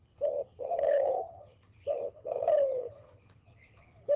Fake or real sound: fake